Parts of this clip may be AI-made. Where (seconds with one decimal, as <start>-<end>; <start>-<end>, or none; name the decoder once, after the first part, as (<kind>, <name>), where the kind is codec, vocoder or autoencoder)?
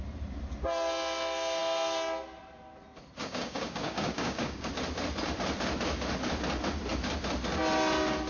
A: 3.2-4.7 (codec, DAC)